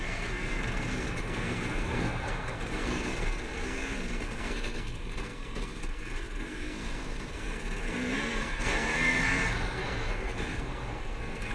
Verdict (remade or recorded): remade